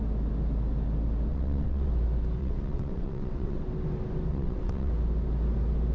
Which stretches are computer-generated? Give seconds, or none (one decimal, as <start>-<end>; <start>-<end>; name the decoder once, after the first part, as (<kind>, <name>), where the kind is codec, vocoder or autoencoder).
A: 1.3-1.9 (vocoder, WaveNeXt); 2.4-3.6; 4.3-4.9